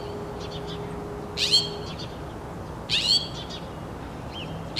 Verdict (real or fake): real